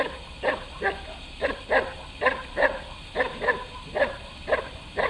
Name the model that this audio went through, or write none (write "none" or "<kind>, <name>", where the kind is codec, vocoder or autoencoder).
none